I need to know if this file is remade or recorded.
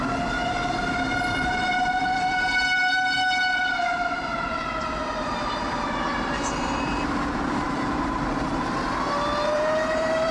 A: remade